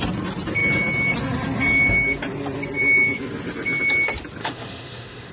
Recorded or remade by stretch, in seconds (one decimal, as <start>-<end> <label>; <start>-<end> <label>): 0.0-4.4 recorded; 4.4-5.3 remade